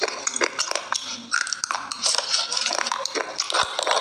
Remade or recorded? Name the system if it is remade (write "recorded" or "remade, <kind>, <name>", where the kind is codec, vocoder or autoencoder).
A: recorded